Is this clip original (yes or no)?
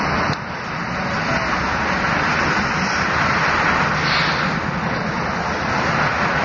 yes